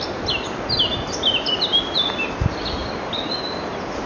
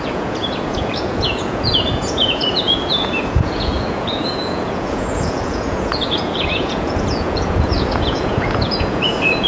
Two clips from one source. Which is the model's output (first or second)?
second